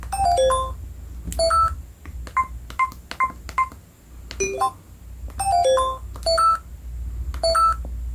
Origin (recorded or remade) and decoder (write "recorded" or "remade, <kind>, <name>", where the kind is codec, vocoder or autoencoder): recorded